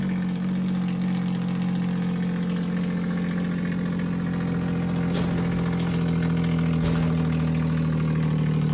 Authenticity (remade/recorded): recorded